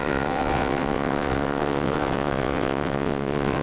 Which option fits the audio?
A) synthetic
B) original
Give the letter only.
A